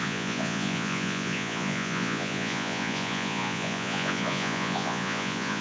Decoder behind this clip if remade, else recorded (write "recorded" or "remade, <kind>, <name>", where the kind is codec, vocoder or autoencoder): remade, vocoder, Vocos